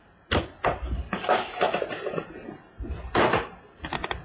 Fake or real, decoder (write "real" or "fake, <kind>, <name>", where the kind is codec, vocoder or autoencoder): fake, vocoder, BigVGAN v2